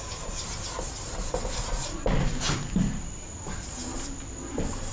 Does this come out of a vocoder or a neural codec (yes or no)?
no